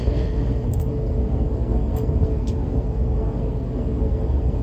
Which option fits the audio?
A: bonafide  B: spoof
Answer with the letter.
B